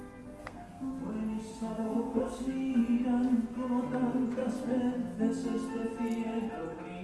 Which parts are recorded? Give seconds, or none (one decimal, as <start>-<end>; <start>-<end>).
0.0-0.4; 0.9-1.5; 2.8-7.0